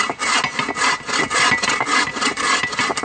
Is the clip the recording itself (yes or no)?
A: yes